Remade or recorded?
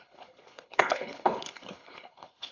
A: remade